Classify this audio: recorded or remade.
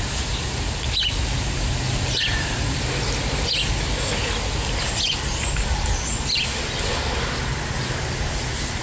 recorded